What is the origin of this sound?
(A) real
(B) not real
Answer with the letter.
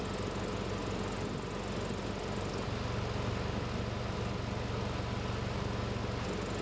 A